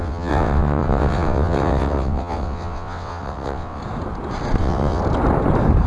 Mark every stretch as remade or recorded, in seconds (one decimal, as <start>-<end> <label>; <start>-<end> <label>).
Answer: 0.0-3.8 remade; 3.8-4.6 recorded; 4.6-5.0 remade; 5.0-5.9 recorded